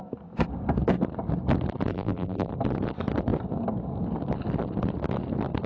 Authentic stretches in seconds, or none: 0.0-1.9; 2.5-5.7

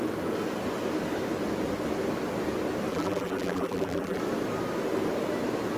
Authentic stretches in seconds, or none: 0.0-2.9; 4.2-5.8

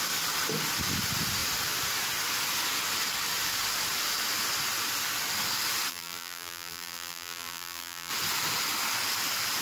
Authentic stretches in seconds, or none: 0.0-5.9; 8.1-9.6

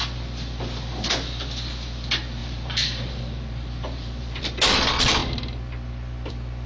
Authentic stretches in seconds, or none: 0.0-2.4; 4.4-6.7

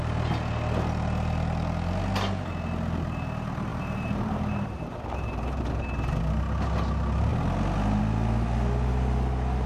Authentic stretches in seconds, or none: 0.0-3.7; 5.6-9.7

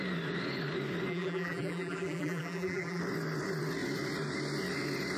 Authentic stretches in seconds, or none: 0.0-1.1; 3.0-5.2

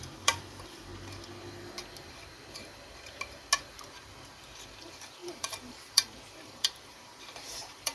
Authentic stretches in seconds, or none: 0.9-4.8

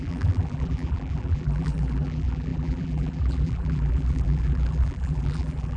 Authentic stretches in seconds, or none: none